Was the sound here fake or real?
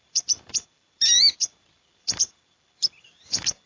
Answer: fake